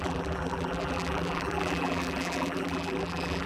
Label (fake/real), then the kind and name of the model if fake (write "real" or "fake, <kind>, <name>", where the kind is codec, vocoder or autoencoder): fake, vocoder, BigVGAN v2